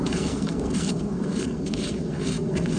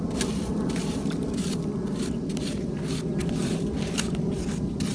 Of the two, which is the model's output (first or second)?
first